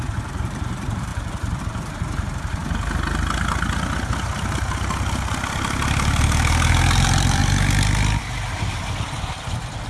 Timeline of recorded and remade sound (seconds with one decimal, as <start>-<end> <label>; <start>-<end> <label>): 0.0-1.1 remade; 1.1-1.6 recorded; 1.6-2.6 remade; 2.6-6.2 recorded; 6.2-7.4 remade; 7.4-9.9 recorded